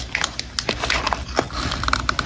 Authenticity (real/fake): real